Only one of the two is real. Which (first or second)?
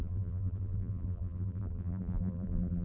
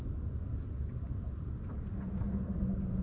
second